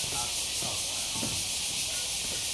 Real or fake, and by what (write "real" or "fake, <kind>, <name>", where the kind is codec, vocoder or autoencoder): real